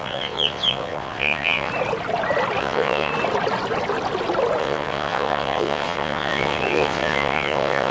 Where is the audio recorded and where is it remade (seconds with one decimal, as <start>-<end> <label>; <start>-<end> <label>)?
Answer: 0.0-1.7 remade; 1.7-2.6 recorded; 2.6-3.1 remade; 3.1-4.6 recorded; 4.6-7.9 remade